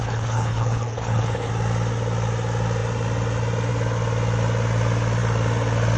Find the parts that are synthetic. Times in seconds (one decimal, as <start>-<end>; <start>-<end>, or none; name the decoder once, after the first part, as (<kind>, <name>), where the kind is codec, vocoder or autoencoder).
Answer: 0.0-1.5 (codec, HILCodec)